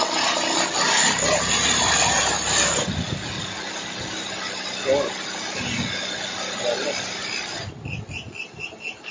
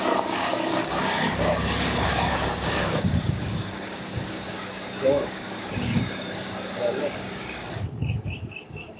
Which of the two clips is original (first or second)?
first